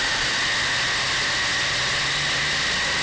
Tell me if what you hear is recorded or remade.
recorded